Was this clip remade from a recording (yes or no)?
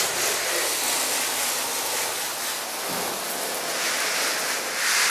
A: no